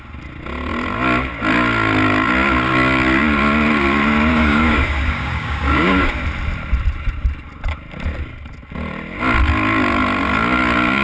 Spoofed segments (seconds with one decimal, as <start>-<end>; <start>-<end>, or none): 4.3-6.1